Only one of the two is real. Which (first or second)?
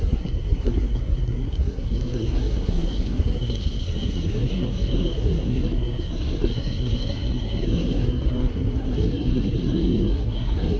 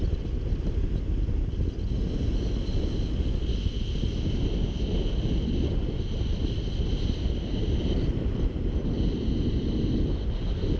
second